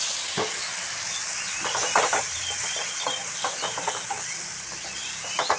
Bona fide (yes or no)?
yes